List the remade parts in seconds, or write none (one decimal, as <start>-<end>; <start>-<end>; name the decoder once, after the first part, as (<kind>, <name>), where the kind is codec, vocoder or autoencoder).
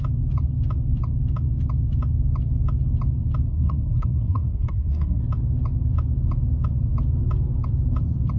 3.5-5.2 (codec, SNAC)